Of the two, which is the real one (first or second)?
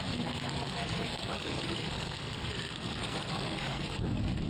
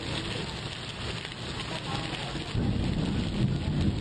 second